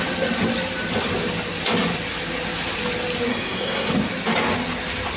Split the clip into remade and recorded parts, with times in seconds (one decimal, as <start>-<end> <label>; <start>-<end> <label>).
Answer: 0.0-3.3 recorded; 3.3-3.9 remade; 3.9-5.2 recorded